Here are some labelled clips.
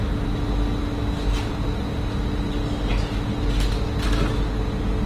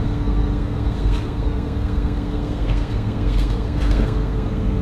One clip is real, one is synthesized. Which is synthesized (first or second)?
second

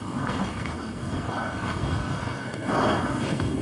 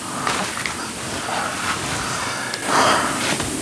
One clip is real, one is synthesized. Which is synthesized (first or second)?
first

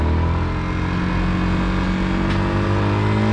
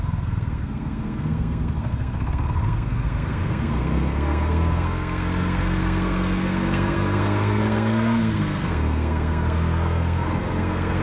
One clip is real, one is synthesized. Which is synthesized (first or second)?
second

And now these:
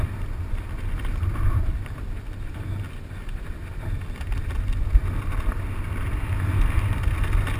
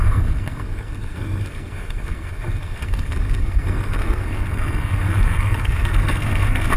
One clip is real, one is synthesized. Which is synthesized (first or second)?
second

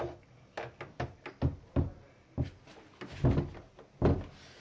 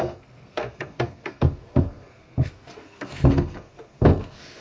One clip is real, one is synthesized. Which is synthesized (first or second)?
second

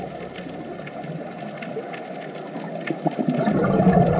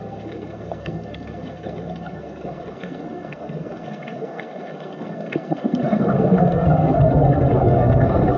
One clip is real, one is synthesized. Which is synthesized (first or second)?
second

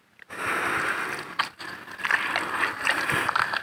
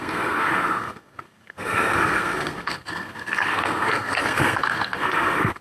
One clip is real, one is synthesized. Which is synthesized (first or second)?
second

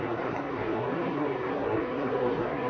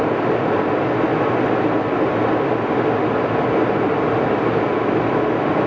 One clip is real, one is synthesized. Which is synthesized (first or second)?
first